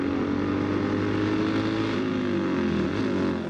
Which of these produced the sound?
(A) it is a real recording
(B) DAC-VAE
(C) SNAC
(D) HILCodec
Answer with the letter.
A